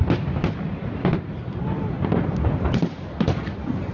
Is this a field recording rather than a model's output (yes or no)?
yes